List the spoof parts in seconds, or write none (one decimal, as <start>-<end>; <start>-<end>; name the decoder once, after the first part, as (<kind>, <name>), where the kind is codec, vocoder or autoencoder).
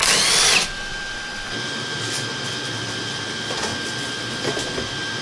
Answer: none